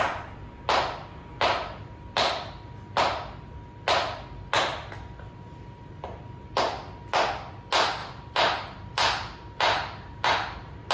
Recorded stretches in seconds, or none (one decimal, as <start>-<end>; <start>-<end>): 0.0-8.0